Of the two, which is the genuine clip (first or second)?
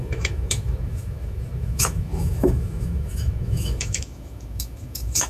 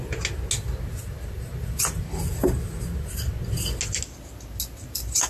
second